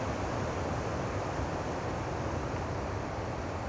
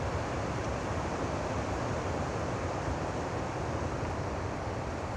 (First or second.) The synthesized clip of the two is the second